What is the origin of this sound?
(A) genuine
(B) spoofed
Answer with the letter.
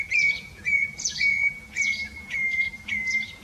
B